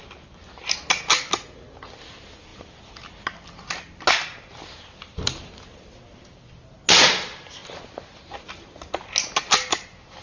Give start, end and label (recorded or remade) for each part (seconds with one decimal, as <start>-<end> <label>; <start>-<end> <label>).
0.0-10.2 recorded